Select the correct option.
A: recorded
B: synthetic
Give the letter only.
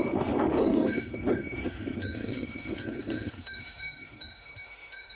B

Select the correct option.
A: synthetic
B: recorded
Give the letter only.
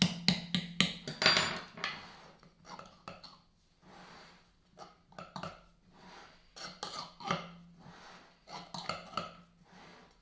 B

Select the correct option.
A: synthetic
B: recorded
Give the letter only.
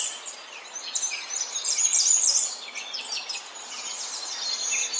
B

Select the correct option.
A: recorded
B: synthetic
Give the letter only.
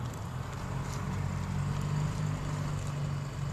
A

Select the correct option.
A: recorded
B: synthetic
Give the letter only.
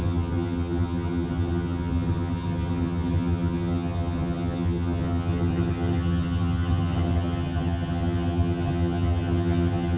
B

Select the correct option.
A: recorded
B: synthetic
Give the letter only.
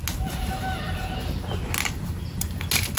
A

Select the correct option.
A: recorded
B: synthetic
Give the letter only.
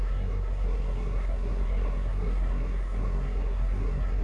B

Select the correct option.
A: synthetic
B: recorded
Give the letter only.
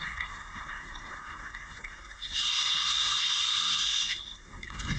A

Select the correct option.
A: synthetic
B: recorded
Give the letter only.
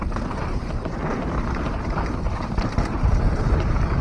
A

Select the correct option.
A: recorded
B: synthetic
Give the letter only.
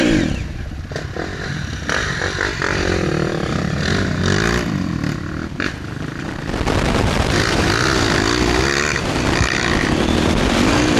B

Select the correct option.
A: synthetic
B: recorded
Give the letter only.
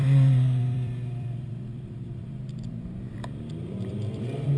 A